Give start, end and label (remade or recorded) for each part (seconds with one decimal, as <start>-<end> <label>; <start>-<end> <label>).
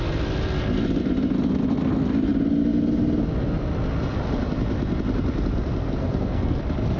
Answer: 0.0-6.0 recorded; 6.0-6.6 remade; 6.6-7.0 recorded